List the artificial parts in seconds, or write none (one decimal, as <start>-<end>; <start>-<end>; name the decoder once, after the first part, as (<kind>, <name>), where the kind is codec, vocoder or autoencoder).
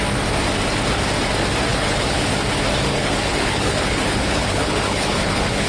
1.7-2.3 (codec, HILCodec); 2.9-5.7